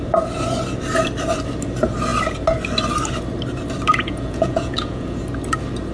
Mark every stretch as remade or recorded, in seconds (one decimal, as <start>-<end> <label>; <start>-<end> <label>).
0.0-3.9 recorded; 3.9-5.2 remade; 5.2-5.9 recorded